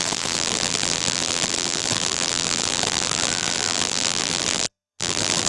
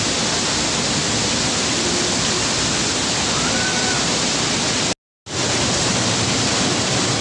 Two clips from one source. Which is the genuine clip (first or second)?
second